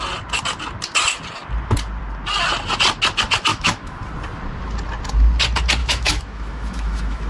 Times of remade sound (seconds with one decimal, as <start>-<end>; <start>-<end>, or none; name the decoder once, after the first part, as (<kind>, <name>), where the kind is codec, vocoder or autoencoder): 3.5-4.0 (autoencoder, DAC-VAE); 5.8-7.3